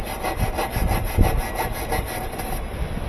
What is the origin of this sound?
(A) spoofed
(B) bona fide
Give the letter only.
B